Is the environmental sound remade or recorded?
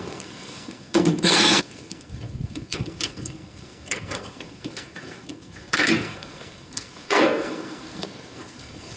remade